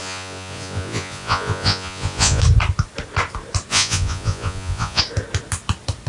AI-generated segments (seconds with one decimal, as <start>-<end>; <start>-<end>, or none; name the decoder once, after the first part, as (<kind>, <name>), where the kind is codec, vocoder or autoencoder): 0.0-2.4 (vocoder, Vocos); 3.7-5.0